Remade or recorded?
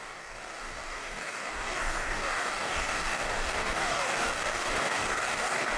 remade